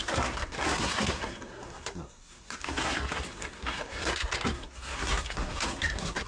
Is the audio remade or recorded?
remade